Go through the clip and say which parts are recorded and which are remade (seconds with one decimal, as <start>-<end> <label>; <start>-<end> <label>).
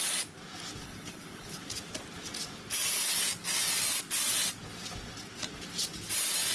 0.0-0.8 recorded; 0.8-1.6 remade; 1.6-6.5 recorded